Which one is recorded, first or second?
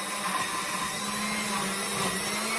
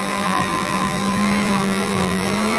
first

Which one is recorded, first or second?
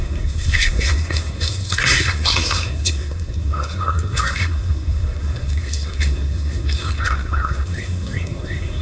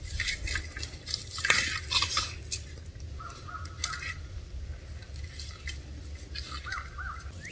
second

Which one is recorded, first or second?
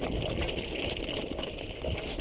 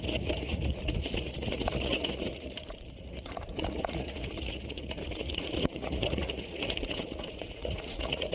first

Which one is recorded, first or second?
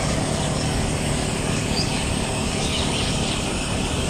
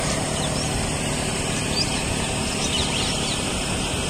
second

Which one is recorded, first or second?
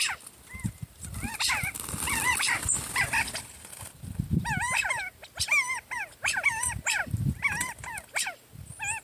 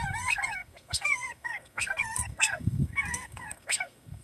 first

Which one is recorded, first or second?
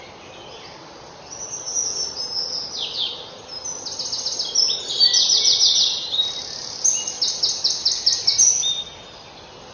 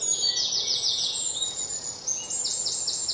first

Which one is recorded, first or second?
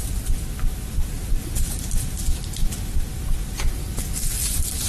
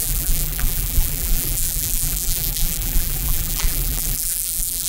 first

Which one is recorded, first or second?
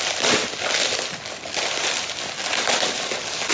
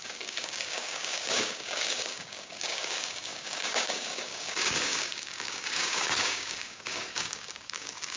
first